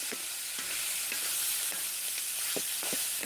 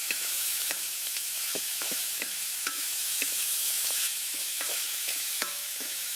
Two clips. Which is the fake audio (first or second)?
second